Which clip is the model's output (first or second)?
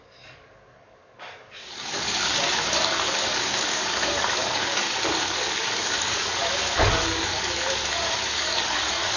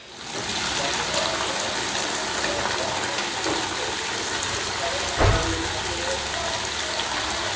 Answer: first